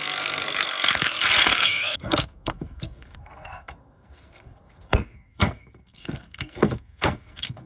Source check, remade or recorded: remade